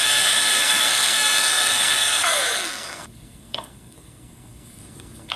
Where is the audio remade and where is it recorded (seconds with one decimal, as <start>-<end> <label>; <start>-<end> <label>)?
0.0-5.4 remade

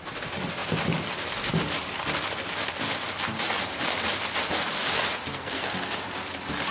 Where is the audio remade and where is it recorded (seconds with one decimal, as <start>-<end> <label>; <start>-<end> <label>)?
0.0-5.3 recorded; 5.3-5.9 remade; 5.9-6.7 recorded